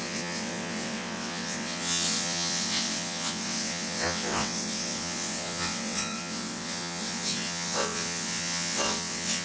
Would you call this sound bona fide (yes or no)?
no